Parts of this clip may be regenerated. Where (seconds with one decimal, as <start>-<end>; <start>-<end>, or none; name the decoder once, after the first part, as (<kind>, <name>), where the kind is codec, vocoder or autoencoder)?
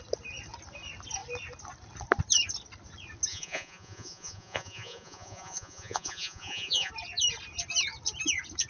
3.3-6.9 (vocoder, Vocos)